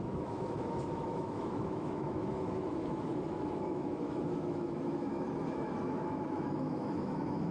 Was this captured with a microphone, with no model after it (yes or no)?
no